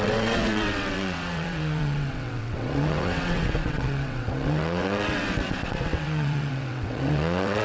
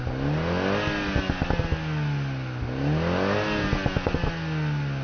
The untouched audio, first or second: second